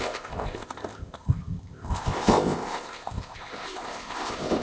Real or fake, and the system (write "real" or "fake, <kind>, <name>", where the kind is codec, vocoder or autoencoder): fake, codec, ZipCodec